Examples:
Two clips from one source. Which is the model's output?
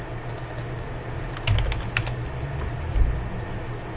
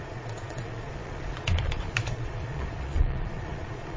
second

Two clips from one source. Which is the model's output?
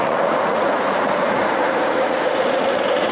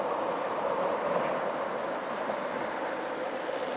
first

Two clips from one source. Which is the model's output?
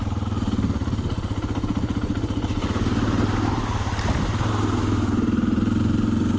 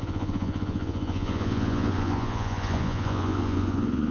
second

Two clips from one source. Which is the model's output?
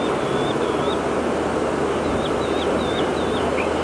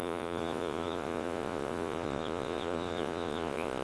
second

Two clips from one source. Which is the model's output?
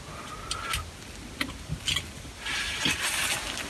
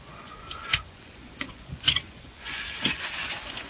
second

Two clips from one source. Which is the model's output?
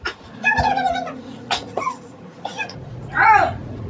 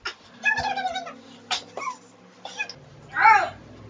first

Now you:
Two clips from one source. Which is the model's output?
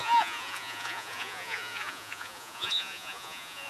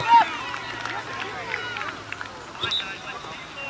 first